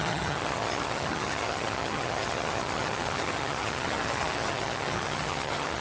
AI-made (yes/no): yes